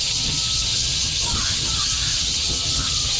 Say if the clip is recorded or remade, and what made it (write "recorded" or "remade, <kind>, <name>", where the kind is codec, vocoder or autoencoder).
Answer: remade, vocoder, HiFi-GAN